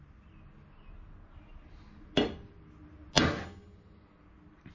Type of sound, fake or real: real